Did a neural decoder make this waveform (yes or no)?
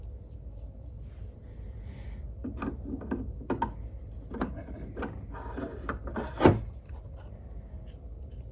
no